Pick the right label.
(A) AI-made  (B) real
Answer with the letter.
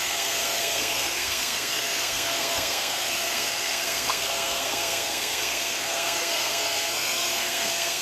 A